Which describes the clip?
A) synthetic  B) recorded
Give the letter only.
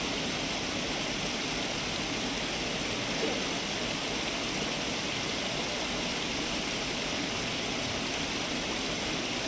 B